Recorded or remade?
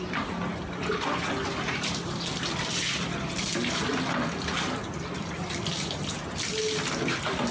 recorded